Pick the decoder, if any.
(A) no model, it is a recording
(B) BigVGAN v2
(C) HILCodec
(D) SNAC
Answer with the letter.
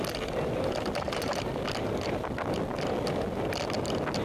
A